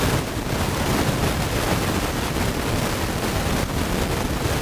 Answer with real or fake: fake